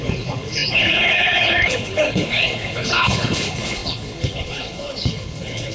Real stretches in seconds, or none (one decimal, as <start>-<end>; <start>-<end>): none